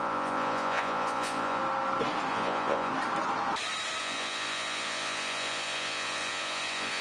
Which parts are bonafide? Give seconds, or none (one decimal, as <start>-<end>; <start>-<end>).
1.6-2.3; 2.9-4.0